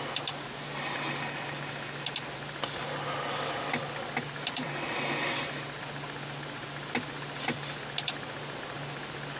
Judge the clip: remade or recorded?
recorded